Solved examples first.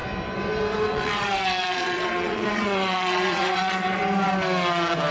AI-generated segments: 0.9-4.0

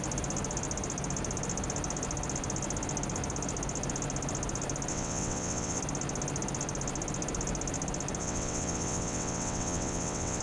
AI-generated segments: 4.9-5.8; 8.2-10.4

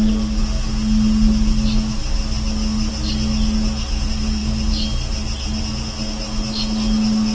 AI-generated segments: none